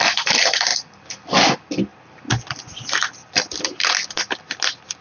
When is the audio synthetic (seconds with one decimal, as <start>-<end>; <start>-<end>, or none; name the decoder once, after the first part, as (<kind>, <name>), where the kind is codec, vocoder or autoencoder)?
none